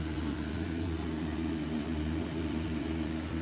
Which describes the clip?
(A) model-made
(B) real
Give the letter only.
A